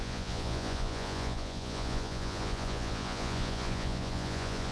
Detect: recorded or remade remade